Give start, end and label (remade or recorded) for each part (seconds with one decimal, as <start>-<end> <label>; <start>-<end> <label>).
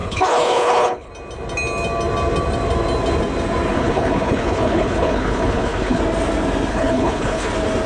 0.0-1.1 remade; 1.1-3.7 recorded; 3.7-6.0 remade; 6.0-6.7 recorded; 6.7-7.5 remade; 7.5-7.9 recorded